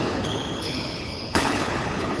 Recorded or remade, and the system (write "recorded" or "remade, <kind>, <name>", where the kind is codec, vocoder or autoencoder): remade, codec, HILCodec